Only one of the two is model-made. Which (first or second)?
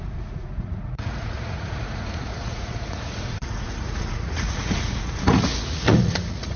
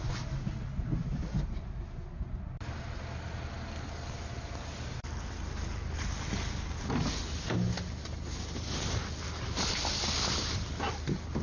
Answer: first